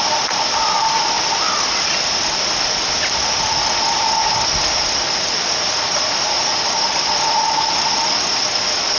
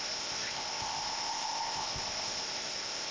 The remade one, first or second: second